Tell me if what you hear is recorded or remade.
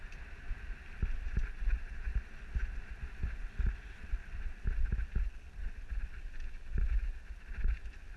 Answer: recorded